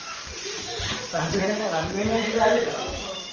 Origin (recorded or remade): remade